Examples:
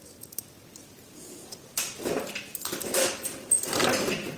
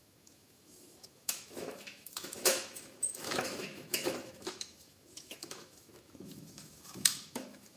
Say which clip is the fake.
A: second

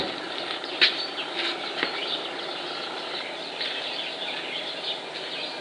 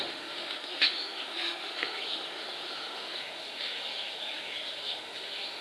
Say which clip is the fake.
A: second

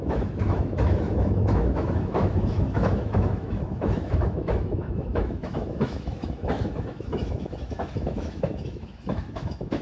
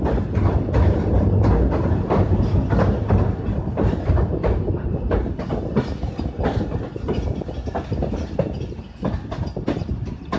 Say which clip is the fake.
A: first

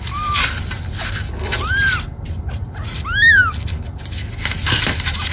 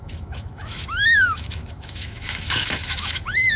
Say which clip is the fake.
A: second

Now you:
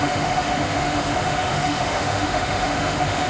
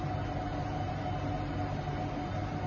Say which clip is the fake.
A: first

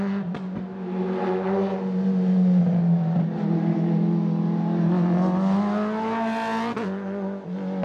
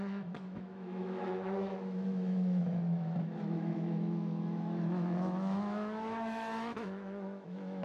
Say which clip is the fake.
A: second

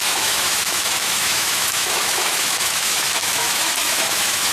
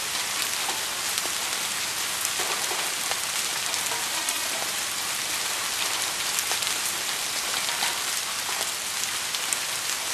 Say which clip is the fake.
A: first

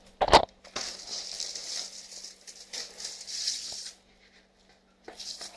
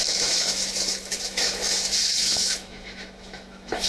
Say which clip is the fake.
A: second